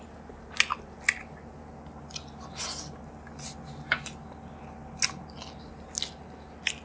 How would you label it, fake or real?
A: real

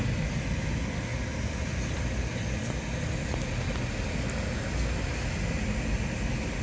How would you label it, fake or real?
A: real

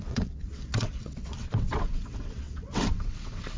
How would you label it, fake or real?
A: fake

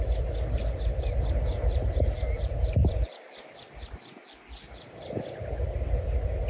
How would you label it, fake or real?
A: real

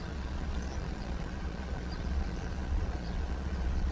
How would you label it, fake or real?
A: fake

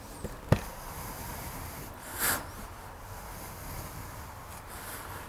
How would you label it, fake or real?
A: real